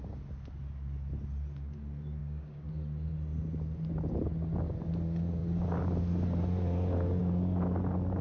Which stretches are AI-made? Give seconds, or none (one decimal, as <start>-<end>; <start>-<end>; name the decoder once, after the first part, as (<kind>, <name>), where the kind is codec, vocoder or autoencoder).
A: 2.2-2.7 (codec, DAC)